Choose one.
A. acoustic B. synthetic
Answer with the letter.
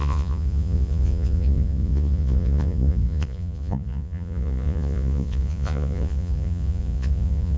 B